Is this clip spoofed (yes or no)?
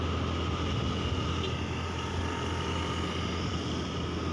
no